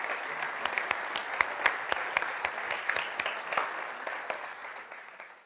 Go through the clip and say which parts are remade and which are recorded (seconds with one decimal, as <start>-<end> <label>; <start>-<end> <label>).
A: 0.0-4.6 recorded; 4.6-5.5 remade